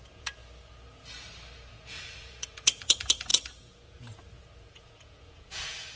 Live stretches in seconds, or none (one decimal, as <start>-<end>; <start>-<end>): 0.4-1.7